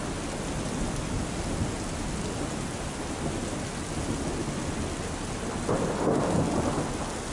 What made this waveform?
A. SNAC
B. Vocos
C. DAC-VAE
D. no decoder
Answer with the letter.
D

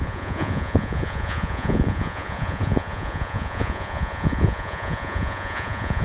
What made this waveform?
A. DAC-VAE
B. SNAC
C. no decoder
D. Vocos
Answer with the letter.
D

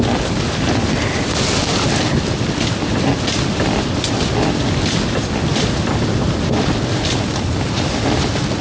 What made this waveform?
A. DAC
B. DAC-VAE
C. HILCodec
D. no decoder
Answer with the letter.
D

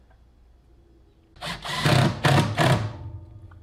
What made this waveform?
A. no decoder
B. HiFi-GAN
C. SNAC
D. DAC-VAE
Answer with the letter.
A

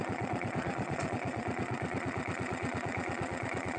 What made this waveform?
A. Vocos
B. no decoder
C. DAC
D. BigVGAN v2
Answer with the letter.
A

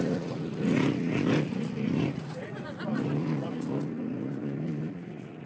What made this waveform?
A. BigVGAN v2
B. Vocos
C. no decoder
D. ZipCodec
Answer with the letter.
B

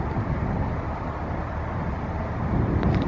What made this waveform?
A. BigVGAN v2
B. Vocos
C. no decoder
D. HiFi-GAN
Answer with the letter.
C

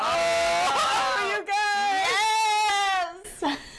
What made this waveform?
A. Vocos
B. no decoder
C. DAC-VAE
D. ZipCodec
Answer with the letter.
B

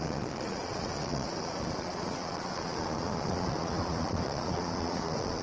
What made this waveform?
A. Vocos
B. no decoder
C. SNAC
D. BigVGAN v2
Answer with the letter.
A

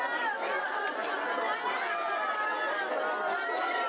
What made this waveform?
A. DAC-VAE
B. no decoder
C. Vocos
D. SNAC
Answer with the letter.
B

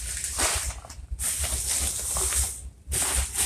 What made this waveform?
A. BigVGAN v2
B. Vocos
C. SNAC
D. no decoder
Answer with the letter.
D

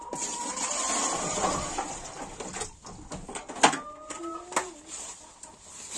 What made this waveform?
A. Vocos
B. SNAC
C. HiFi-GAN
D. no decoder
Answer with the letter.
D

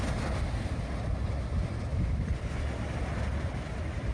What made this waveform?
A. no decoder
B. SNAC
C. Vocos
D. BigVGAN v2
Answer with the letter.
A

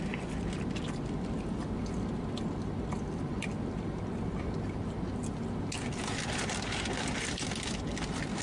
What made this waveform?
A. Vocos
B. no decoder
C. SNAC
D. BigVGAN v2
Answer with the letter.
B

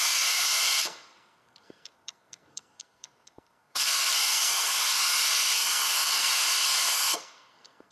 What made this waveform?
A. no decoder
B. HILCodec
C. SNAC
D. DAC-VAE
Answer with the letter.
C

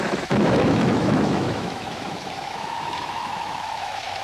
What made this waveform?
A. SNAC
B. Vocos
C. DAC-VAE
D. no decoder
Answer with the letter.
C